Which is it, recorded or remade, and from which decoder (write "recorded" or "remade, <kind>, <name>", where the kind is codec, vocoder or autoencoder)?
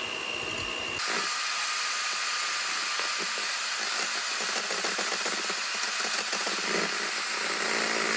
recorded